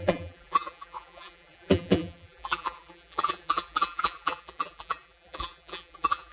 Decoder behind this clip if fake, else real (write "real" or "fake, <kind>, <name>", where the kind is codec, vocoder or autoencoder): fake, vocoder, BigVGAN v2